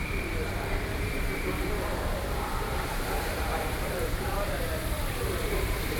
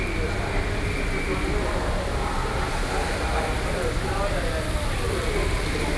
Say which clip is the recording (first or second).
second